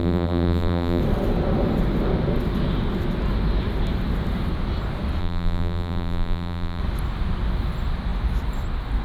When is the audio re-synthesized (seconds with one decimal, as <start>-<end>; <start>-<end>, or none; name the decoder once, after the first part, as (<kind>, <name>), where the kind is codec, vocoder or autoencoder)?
0.0-1.0 (vocoder, BigVGAN v2); 5.2-6.8